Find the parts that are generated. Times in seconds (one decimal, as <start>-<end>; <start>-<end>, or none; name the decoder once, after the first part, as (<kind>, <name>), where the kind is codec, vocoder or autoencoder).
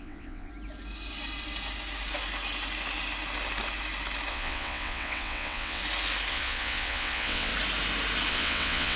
0.0-0.5 (vocoder, WaveNeXt); 4.3-5.8; 6.3-7.5; 8.3-9.0